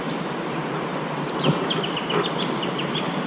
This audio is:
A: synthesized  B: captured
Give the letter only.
B